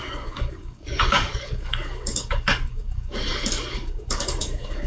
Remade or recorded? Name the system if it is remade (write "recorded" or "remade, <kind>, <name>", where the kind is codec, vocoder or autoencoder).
remade, codec, DAC